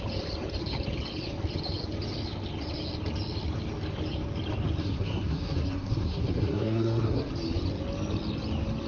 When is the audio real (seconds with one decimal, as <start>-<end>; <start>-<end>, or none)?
0.0-4.8; 7.3-8.9